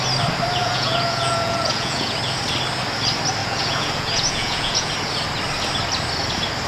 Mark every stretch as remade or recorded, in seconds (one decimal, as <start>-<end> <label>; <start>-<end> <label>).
0.0-0.6 recorded; 0.6-2.2 remade; 2.2-3.4 recorded; 3.4-4.9 remade; 4.9-6.7 recorded